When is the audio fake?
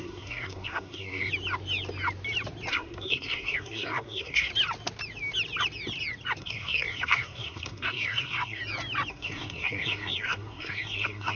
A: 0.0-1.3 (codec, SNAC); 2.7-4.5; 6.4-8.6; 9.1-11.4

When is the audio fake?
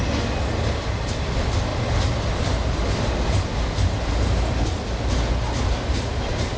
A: none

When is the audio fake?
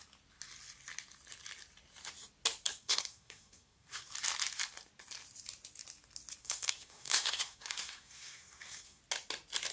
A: 2.7-4.1 (codec, SNAC); 6.4-9.0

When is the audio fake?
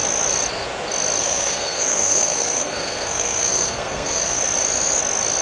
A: 1.2-4.4 (codec, SNAC)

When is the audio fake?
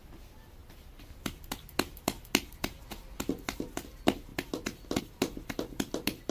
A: none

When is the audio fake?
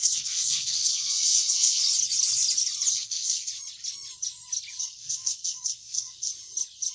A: 0.0-1.8 (codec, SNAC); 2.9-3.5; 4.8-6.3